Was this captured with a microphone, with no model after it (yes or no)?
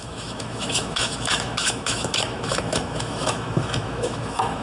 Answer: no